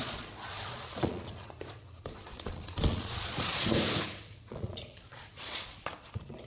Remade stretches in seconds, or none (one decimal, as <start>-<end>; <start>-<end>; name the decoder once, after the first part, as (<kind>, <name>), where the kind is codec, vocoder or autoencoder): 0.0-3.6 (vocoder, Vocos); 4.2-6.5